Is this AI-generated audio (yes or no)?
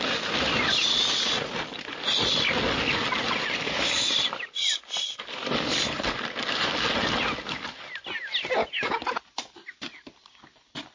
no